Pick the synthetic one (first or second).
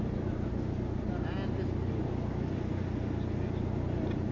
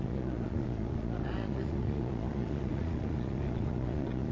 second